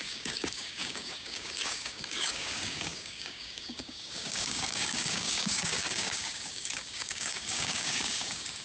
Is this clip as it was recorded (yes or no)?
no